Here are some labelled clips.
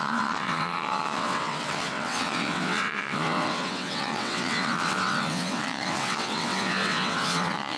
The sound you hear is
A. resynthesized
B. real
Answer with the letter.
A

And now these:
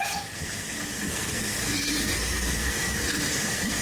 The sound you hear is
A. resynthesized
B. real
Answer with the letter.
A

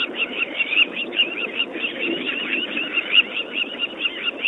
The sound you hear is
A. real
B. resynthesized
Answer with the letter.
A